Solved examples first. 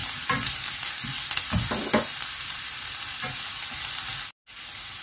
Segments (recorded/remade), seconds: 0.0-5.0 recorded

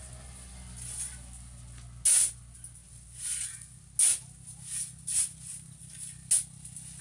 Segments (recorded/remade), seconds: 0.0-7.0 recorded

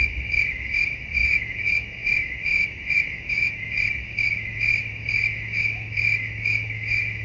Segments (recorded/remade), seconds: 0.0-7.2 remade

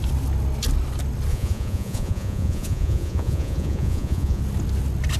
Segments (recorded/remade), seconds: 0.0-1.3 recorded; 1.3-4.4 remade; 4.4-5.2 recorded

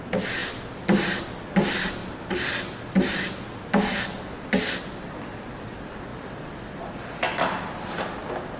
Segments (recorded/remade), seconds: 0.0-8.6 recorded